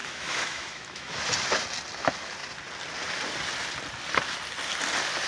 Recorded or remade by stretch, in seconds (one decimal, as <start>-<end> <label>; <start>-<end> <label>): 0.0-1.2 remade; 1.2-5.3 recorded